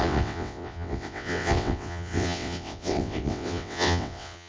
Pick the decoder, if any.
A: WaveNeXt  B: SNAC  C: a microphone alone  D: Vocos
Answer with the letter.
A